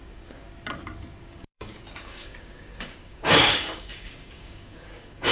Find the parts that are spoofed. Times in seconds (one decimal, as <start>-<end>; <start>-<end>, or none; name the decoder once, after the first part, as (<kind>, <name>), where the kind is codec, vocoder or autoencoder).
0.0-0.5 (codec, DAC); 1.2-5.3